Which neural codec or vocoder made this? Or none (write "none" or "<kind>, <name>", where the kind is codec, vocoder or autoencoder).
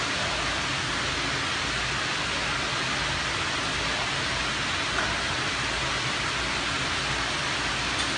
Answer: none